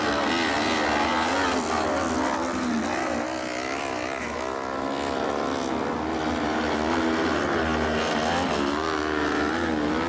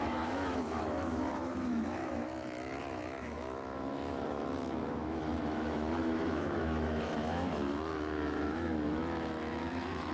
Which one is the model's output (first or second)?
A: second